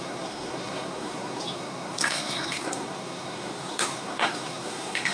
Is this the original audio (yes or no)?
no